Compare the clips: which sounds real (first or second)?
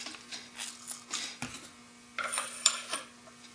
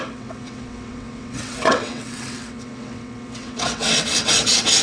first